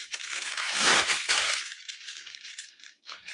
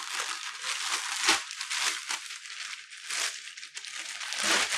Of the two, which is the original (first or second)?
second